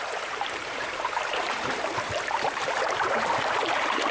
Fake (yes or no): yes